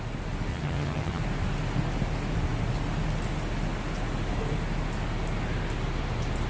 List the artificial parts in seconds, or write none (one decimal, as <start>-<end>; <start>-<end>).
0.5-1.2